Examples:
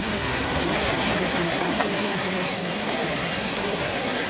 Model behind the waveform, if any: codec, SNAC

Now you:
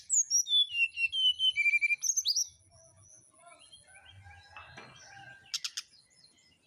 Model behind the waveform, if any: none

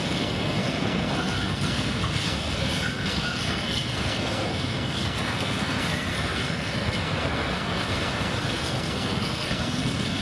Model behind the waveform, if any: codec, SNAC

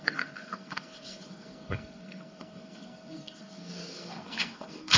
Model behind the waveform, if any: codec, SNAC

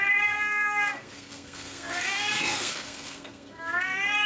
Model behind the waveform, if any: codec, SNAC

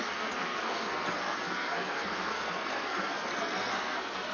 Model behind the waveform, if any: codec, SNAC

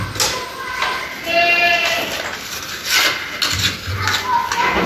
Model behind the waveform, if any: none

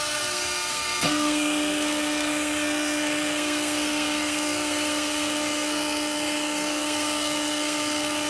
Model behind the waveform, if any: codec, SNAC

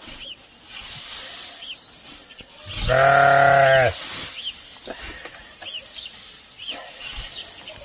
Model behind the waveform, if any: none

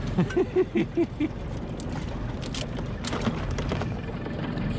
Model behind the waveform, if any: none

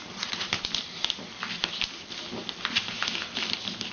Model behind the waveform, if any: none